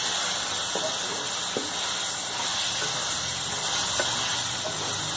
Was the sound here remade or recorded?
recorded